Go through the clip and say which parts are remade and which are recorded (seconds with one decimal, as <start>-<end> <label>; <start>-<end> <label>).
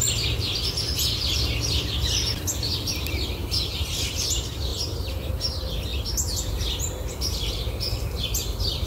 0.0-4.7 recorded; 4.7-5.3 remade; 5.3-8.9 recorded